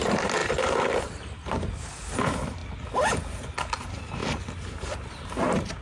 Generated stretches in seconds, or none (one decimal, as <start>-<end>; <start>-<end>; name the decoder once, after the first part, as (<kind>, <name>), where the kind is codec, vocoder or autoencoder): 0.0-2.6 (vocoder, BigVGAN v2); 3.7-4.2; 5.1-5.8